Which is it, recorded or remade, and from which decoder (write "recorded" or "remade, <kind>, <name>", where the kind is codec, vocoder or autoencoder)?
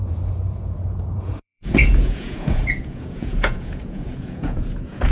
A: remade, vocoder, Vocos